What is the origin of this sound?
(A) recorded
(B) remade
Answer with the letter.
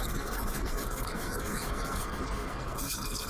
B